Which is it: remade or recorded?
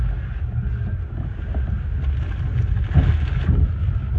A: recorded